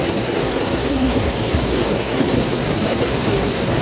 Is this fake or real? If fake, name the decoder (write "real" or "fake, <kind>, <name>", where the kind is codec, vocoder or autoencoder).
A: fake, codec, SNAC